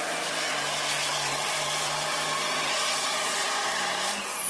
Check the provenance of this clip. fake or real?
real